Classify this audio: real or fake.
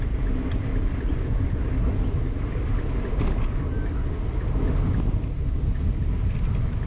real